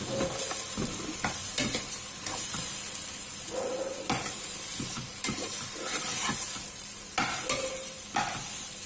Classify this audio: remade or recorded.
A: recorded